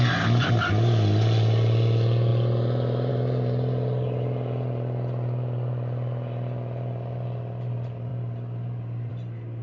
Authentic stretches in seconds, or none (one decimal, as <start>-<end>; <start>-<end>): 0.0-9.6